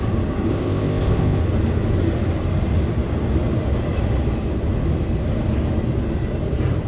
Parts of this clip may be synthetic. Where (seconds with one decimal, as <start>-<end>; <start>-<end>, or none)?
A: 0.5-1.4